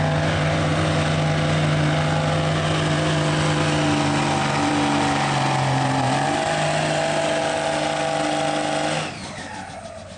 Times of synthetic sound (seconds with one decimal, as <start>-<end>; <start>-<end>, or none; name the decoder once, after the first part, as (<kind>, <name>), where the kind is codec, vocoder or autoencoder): none